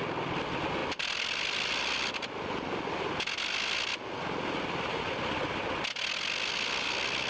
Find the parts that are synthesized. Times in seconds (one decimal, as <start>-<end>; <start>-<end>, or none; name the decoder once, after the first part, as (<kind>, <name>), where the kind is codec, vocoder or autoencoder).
none